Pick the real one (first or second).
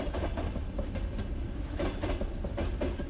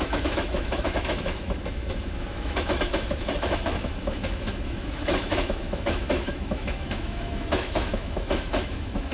first